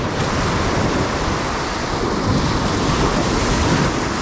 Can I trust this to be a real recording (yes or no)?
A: yes